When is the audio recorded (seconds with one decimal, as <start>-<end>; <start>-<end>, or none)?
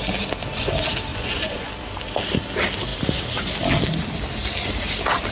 0.0-1.1; 1.7-5.3